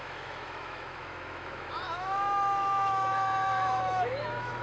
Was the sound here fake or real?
fake